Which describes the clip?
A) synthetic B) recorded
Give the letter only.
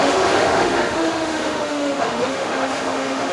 A